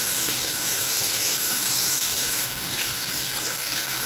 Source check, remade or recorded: remade